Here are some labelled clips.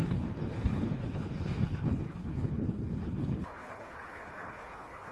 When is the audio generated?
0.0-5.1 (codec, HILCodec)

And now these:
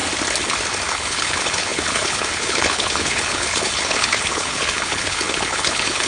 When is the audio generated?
0.9-6.1 (codec, HILCodec)

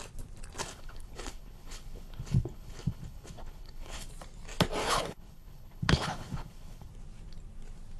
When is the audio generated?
0.6-4.1 (codec, HILCodec); 4.8-6.9

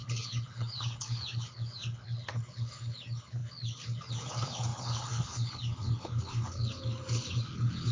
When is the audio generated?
0.0-7.9 (codec, HILCodec)

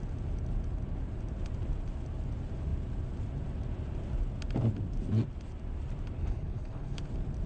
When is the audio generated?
6.2-7.0 (codec, HILCodec)

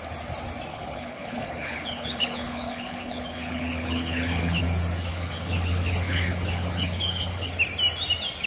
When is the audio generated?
0.7-4.6 (codec, HILCodec); 5.0-7.5